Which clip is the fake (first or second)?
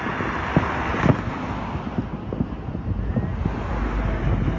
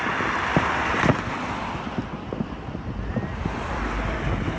second